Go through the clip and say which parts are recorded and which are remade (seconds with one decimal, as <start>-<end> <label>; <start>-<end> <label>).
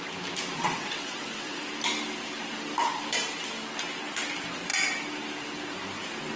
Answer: 0.0-0.6 recorded; 0.6-1.7 remade; 1.7-6.4 recorded